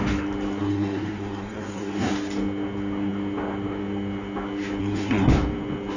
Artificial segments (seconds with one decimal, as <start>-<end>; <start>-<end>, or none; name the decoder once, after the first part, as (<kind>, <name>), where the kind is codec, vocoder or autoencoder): 0.6-2.1 (codec, SNAC); 4.8-5.3